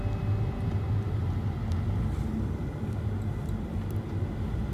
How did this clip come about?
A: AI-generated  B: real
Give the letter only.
B